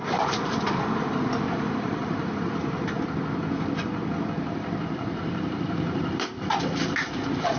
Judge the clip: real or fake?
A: fake